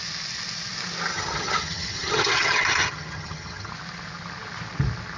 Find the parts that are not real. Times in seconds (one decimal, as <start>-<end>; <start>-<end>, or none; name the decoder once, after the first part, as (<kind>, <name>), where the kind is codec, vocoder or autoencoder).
1.1-3.7 (vocoder, HiFi-GAN)